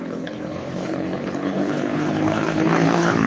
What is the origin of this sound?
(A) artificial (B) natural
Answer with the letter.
A